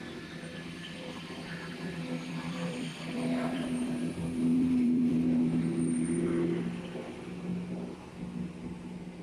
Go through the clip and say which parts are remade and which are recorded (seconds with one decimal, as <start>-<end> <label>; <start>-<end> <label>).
0.0-0.5 recorded; 0.5-5.6 remade; 5.6-9.2 recorded